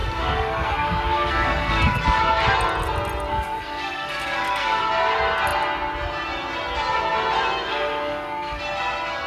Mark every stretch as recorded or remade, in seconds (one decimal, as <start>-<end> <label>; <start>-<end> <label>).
0.0-2.2 remade; 2.2-3.3 recorded; 3.3-4.8 remade; 4.8-7.7 recorded; 7.7-8.6 remade; 8.6-9.3 recorded